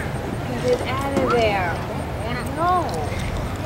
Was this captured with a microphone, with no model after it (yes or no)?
yes